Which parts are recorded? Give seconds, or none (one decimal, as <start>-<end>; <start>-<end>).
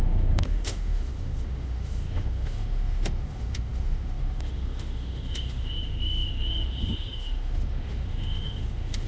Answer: none